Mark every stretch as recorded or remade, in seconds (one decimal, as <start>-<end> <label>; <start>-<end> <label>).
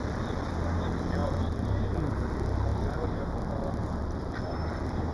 0.0-5.1 recorded